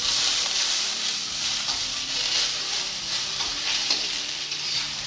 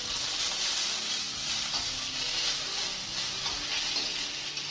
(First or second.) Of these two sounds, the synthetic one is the first